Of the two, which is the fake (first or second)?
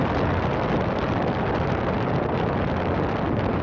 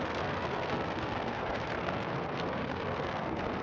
second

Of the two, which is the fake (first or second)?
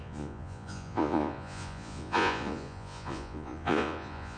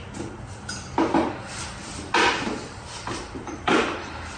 first